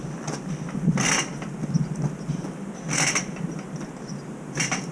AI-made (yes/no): no